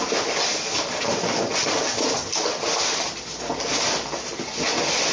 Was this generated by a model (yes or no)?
no